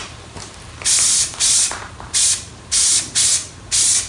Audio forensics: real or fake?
fake